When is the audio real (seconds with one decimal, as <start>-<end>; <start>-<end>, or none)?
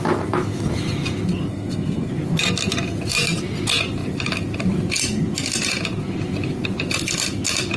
0.0-1.5; 2.1-7.8